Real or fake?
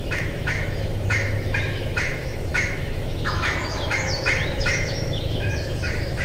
fake